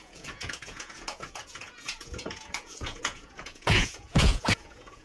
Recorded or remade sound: remade